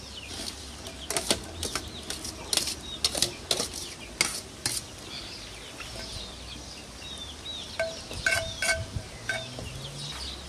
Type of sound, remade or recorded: recorded